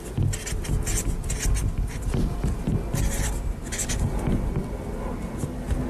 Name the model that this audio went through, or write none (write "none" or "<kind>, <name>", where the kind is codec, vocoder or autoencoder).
none